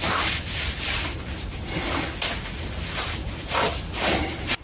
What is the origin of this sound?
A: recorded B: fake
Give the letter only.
B